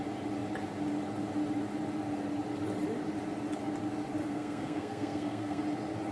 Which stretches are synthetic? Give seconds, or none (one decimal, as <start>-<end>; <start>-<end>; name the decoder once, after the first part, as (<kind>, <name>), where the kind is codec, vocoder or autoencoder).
4.2-5.6 (codec, SNAC)